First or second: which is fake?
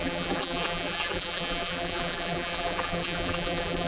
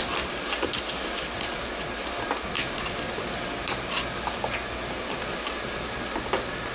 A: first